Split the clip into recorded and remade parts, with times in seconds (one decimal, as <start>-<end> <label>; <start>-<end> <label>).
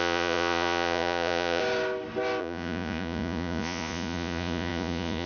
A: 0.0-1.6 remade; 1.6-2.4 recorded; 2.4-5.3 remade